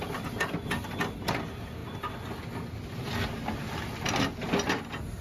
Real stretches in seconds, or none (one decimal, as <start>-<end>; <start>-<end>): 0.0-5.2